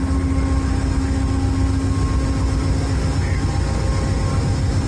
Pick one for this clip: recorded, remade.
recorded